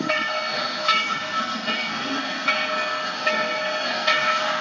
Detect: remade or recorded remade